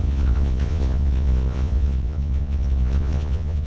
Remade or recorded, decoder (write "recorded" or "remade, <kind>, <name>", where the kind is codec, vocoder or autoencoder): remade, vocoder, Vocos